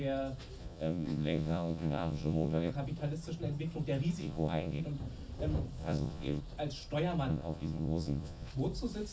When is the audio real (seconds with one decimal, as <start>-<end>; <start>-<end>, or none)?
0.0-0.6; 2.7-4.2; 4.8-5.8; 6.4-7.3; 8.5-9.1